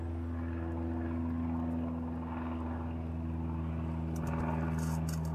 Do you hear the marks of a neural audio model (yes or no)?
no